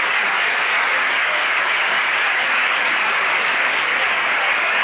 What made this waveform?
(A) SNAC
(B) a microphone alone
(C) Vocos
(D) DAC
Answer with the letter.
D